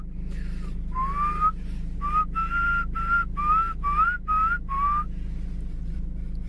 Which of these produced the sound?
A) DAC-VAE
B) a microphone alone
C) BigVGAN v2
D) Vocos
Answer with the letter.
B